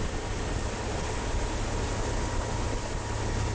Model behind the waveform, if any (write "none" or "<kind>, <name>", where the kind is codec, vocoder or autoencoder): none